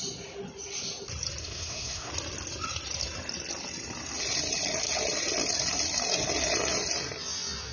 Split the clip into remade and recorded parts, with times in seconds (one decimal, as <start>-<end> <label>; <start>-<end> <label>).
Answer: 0.0-1.4 recorded; 1.4-2.1 remade; 2.1-7.7 recorded